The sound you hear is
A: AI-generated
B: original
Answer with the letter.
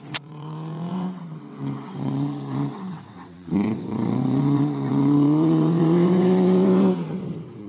A